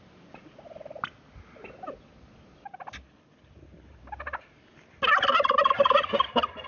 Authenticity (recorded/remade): recorded